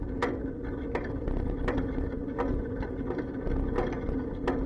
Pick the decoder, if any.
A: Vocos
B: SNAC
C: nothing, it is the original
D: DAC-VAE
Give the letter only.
C